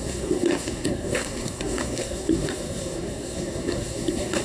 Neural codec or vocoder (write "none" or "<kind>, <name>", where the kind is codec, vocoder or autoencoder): codec, SNAC